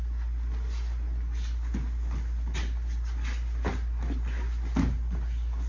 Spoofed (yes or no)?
no